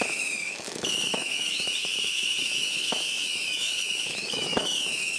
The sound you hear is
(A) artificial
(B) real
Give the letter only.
A